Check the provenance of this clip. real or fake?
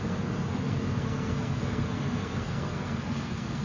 fake